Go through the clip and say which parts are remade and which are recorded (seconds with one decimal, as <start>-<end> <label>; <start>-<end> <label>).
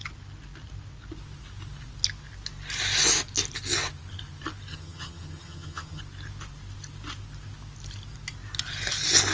0.0-4.7 recorded; 4.7-6.0 remade; 6.0-9.3 recorded